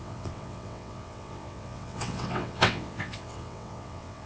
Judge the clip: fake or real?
fake